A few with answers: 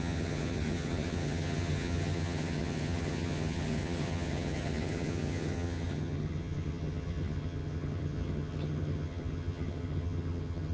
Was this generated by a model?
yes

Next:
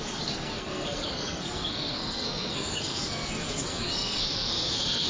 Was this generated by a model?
yes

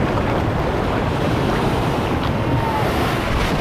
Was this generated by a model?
no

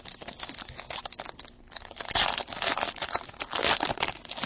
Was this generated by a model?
no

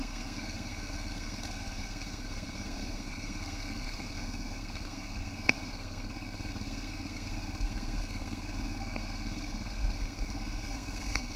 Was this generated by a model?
yes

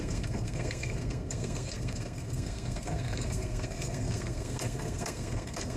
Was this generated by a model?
yes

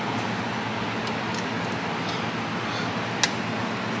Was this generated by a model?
no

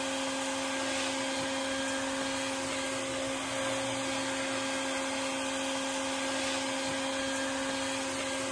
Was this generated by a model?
no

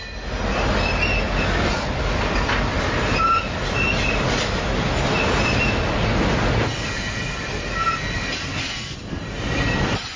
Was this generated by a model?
no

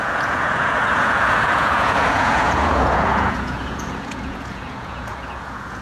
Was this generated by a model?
yes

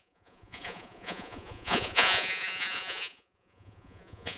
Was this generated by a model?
yes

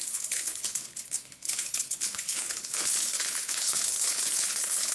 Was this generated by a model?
yes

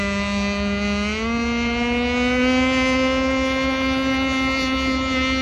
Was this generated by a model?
no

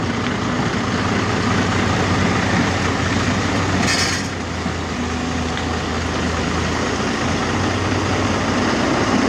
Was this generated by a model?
no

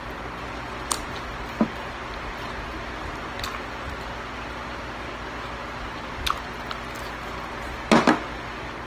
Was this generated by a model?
no